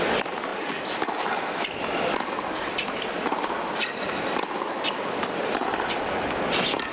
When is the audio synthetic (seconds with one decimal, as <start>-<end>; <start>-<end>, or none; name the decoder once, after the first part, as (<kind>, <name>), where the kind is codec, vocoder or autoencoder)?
none